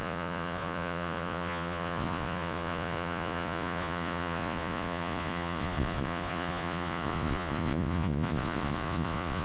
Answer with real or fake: fake